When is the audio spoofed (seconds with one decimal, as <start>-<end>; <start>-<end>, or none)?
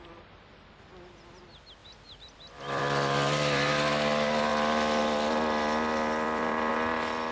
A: 1.8-2.8; 4.5-6.7